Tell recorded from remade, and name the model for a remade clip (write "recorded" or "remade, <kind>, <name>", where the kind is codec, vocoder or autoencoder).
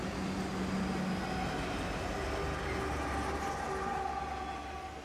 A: recorded